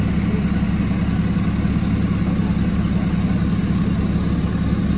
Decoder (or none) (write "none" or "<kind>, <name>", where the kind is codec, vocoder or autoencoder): none